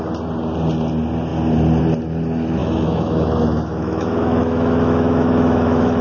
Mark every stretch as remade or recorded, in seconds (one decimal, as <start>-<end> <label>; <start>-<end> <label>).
0.0-2.6 recorded; 2.6-6.0 remade